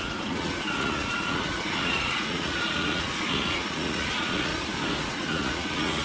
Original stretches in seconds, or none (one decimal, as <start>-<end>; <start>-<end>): 4.5-5.0